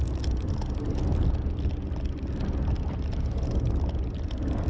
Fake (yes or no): no